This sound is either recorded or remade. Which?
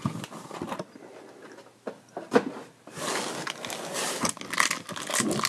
recorded